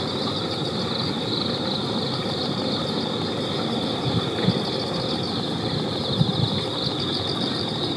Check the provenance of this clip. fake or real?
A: real